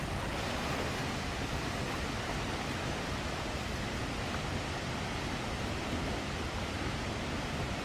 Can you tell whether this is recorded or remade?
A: recorded